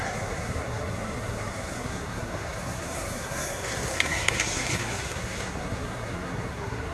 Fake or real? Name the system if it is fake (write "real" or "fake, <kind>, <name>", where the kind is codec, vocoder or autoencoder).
fake, codec, SNAC